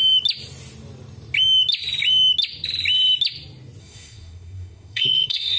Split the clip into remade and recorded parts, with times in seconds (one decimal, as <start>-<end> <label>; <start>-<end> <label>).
0.0-3.8 recorded; 3.8-5.6 remade